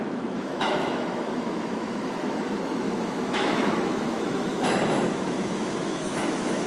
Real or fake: fake